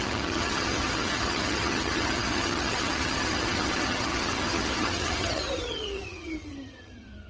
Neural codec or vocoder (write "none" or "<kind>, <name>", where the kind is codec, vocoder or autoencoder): vocoder, HiFi-GAN